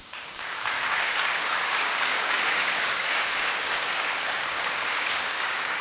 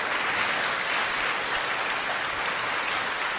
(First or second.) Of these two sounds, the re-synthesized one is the first